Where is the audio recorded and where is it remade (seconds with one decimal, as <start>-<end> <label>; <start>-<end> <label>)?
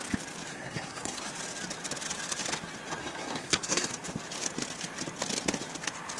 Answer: 0.0-0.5 recorded; 0.5-1.3 remade; 1.3-3.0 recorded; 3.0-3.9 remade; 3.9-6.2 recorded